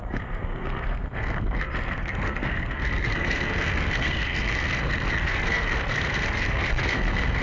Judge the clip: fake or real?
fake